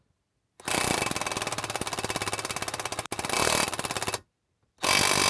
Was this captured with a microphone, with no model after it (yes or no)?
yes